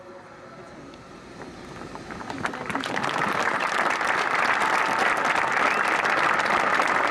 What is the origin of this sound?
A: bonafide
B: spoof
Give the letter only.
A